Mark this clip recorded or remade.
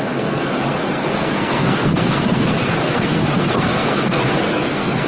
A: remade